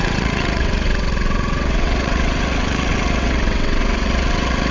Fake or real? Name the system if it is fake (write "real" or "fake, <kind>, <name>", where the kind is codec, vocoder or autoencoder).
fake, vocoder, WaveNeXt